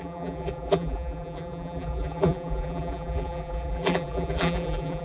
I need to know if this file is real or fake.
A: fake